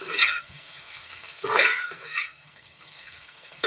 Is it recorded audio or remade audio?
remade